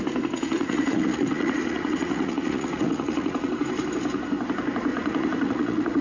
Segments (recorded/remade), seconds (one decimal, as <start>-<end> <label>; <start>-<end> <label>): 0.0-0.4 recorded; 0.4-3.5 remade; 3.5-4.9 recorded; 4.9-6.0 remade